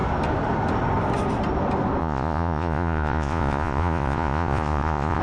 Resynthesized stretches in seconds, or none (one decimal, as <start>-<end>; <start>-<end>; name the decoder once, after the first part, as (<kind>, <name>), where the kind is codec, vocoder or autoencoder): 2.0-5.2 (vocoder, Vocos)